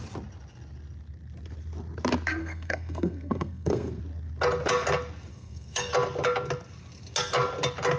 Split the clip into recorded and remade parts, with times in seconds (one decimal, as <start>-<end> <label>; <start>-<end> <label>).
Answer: 0.0-2.4 recorded; 2.4-4.0 remade; 4.0-5.3 recorded; 5.3-5.9 remade; 5.9-8.0 recorded